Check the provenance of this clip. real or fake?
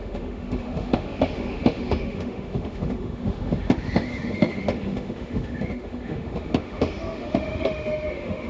fake